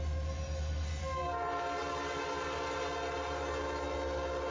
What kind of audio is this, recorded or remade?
recorded